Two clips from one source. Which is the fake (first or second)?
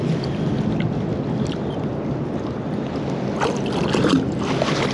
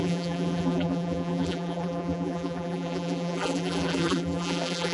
second